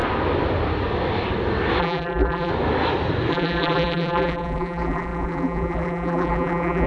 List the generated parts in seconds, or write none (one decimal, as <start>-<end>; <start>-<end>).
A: 1.8-2.5; 3.3-6.9

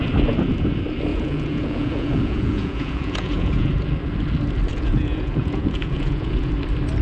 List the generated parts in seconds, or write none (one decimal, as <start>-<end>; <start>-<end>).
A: 1.1-3.7; 4.7-6.5

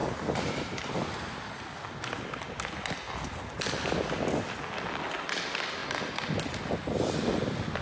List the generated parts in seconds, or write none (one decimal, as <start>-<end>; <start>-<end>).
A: 0.0-1.5

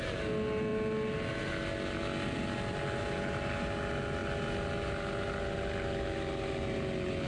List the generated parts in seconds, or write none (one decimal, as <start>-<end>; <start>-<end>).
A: none

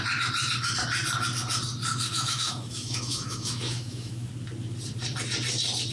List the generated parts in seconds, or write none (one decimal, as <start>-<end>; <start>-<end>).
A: 1.9-4.3

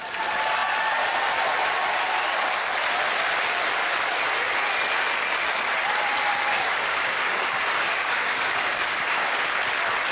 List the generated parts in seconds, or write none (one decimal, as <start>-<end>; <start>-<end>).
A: 6.3-9.6

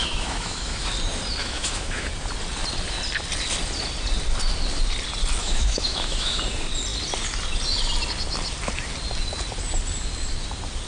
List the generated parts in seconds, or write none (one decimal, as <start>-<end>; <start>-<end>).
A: 0.0-0.9; 1.4-2.1; 5.4-6.4